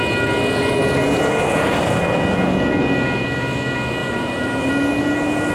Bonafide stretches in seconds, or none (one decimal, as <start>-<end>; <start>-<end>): 0.0-4.0; 4.7-5.5